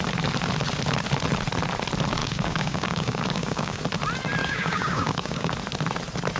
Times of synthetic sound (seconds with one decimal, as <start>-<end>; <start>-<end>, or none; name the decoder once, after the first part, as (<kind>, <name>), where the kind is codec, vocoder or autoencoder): 2.2-3.8 (codec, DAC); 4.4-5.5